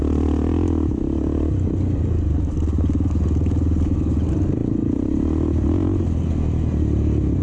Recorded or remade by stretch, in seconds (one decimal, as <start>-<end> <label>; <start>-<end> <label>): 0.0-7.4 recorded